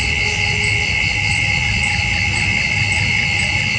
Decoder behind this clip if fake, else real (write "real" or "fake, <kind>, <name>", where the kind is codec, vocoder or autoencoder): real